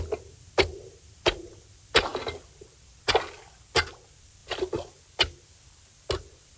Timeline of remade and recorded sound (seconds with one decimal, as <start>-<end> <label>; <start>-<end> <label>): 0.0-0.7 recorded; 0.7-1.5 remade; 1.5-6.6 recorded